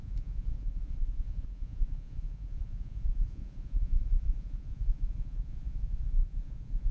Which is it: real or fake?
fake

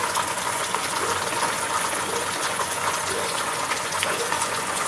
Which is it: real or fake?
fake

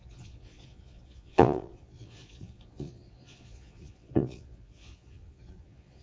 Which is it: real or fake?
fake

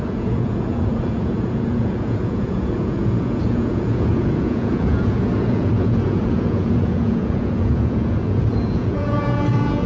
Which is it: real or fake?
fake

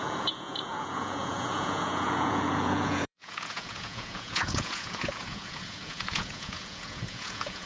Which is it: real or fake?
fake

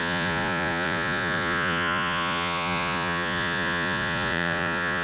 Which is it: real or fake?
fake